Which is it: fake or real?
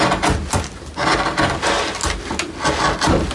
real